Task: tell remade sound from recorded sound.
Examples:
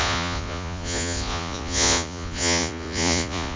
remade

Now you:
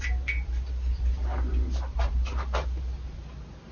recorded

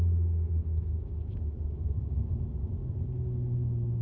recorded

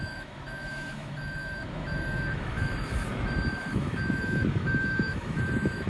remade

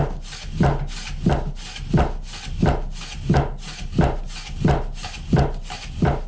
recorded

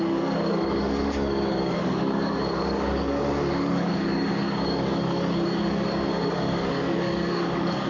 remade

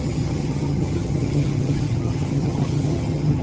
remade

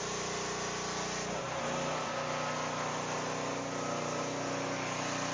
recorded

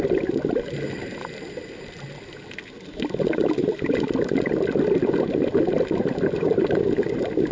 recorded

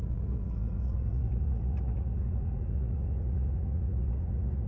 remade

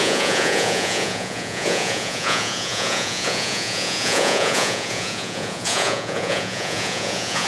remade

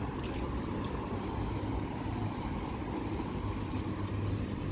recorded